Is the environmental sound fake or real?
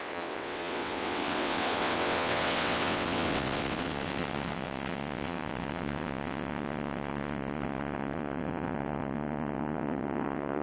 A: fake